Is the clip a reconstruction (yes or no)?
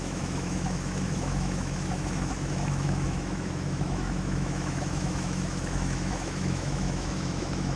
yes